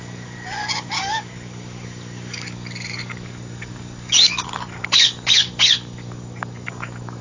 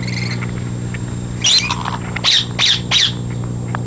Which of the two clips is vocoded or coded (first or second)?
first